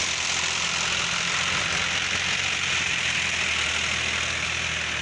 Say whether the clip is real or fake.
real